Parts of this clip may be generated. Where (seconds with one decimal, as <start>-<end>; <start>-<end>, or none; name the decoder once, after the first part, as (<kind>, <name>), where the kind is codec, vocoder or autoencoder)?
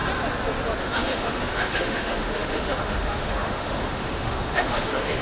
0.8-5.2 (autoencoder, DAC-VAE)